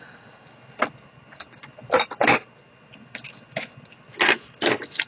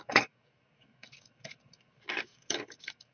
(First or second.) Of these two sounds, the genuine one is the first